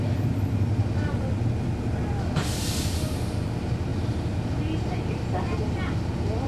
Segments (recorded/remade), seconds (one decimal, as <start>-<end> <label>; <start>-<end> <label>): 0.0-6.5 recorded